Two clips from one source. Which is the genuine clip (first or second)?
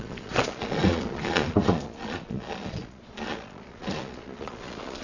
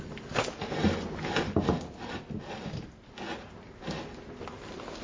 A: second